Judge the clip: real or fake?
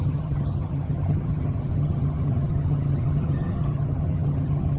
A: fake